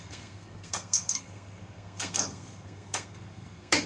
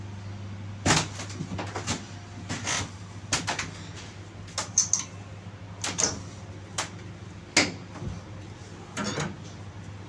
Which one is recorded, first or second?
second